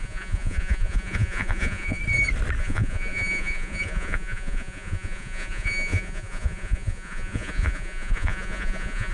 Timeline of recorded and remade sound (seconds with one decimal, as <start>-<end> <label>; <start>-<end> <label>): 0.0-2.0 remade; 2.0-2.6 recorded; 2.6-9.1 remade